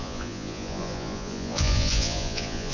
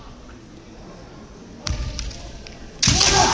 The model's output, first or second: first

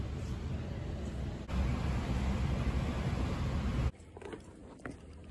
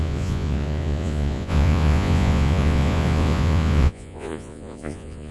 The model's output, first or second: second